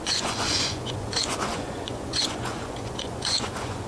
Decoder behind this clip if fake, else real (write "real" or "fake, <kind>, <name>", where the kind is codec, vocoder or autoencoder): fake, vocoder, Vocos